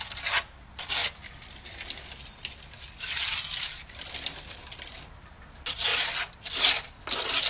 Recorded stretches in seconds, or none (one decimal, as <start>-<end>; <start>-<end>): 0.0-7.5